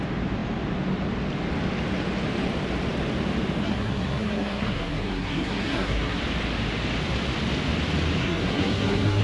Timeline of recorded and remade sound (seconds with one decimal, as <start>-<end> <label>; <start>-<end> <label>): 0.0-3.6 recorded; 3.6-6.2 remade; 6.2-8.2 recorded; 8.2-9.2 remade

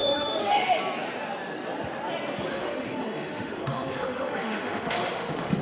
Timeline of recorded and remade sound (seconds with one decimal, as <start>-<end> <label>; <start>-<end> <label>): 0.0-0.8 remade; 0.8-2.5 recorded; 2.5-5.6 remade

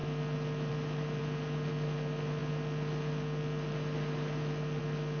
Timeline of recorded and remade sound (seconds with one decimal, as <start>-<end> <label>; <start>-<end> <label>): 0.0-5.2 recorded

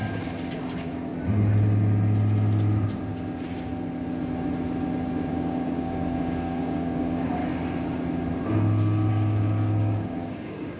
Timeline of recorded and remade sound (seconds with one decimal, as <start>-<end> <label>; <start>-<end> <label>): 0.0-0.6 recorded; 0.6-1.1 remade; 1.1-5.3 recorded; 5.3-7.4 remade; 7.4-9.1 recorded; 9.1-10.8 remade

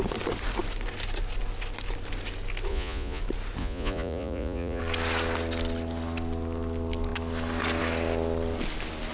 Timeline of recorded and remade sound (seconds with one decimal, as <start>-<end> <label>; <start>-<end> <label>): 0.0-2.7 recorded; 2.7-3.2 remade; 3.2-3.6 recorded; 3.6-4.8 remade; 4.8-9.1 recorded

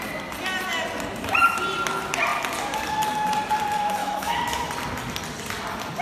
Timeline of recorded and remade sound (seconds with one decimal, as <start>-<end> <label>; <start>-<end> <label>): 0.0-4.0 recorded; 4.0-4.7 remade; 4.7-6.0 recorded

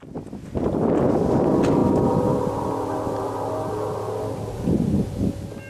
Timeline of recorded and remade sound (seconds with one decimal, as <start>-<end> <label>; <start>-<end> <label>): 0.0-5.7 recorded